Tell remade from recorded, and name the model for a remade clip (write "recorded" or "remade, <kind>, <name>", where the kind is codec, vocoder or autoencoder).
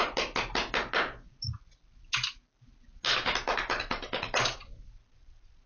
recorded